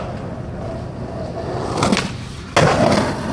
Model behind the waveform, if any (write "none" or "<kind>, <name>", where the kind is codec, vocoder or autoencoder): none